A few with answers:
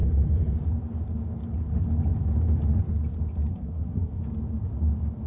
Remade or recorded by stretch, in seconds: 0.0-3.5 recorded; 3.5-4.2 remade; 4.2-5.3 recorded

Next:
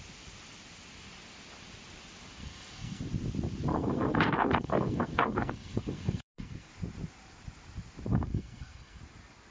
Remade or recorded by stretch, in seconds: 0.0-2.4 recorded; 2.4-3.0 remade; 3.0-3.7 recorded; 3.7-6.7 remade; 6.7-8.1 recorded; 8.1-9.0 remade; 9.0-9.5 recorded

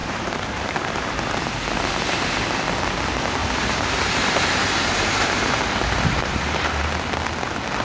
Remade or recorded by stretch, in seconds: 0.0-1.4 remade; 1.4-3.4 recorded; 3.4-6.9 remade; 6.9-7.8 recorded

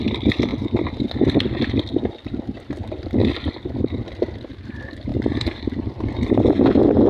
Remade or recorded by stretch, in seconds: 0.0-7.1 recorded

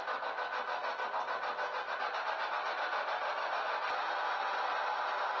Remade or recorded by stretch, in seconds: 0.0-5.4 recorded

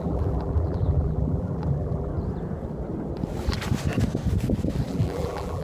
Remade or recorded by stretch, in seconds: 0.0-2.1 remade; 2.1-4.9 recorded; 4.9-5.6 remade

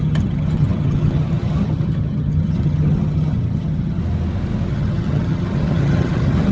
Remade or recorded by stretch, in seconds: 0.0-4.0 remade; 4.0-4.7 recorded; 4.7-6.5 remade